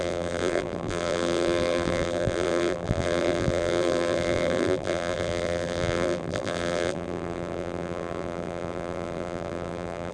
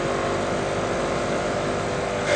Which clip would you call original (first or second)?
second